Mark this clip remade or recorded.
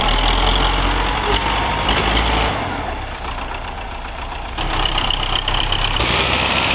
remade